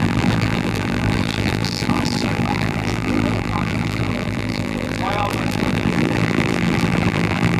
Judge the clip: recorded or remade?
remade